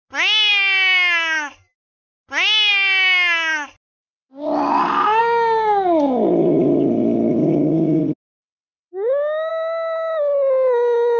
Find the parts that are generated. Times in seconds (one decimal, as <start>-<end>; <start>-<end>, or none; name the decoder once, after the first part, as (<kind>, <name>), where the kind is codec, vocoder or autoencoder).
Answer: 7.4-8.0 (codec, DAC)